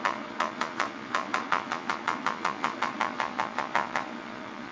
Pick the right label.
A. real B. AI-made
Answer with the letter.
B